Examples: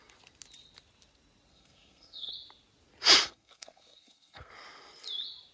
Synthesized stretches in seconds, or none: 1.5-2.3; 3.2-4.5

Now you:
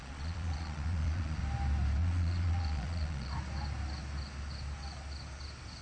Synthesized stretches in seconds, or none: 0.0-1.4; 2.0-3.3

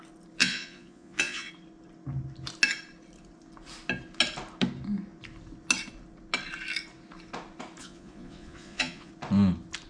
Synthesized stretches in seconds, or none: 0.4-1.5; 7.8-9.1